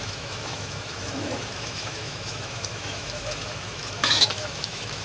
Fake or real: fake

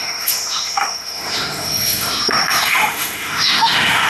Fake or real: fake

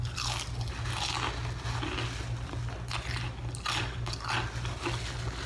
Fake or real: real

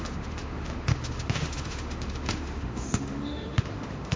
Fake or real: fake